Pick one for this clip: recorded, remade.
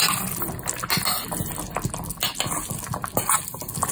recorded